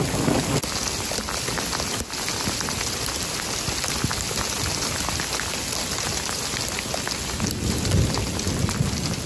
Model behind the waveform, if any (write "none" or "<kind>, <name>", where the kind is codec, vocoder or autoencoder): none